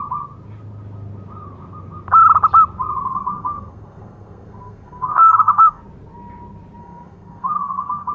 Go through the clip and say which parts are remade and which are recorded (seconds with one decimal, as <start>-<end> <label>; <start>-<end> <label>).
0.0-3.1 recorded; 3.1-5.8 remade; 5.8-6.8 recorded; 6.8-8.1 remade